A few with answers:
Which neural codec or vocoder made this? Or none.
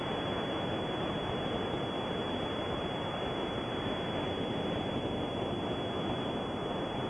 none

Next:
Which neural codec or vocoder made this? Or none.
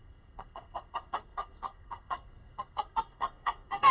codec, SNAC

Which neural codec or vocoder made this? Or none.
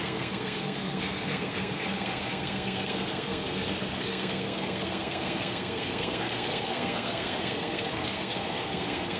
codec, SNAC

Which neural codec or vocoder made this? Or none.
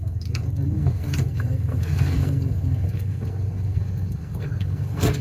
codec, SNAC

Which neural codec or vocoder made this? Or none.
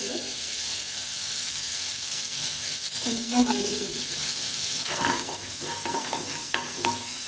codec, SNAC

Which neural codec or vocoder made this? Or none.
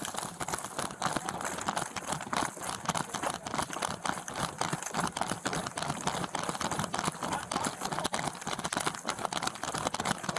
none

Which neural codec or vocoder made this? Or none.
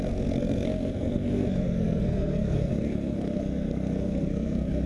codec, SNAC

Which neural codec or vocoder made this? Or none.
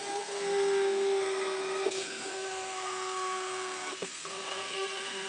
codec, SNAC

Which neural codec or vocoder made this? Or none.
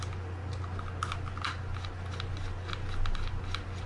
none